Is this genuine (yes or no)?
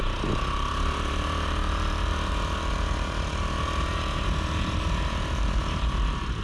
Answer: no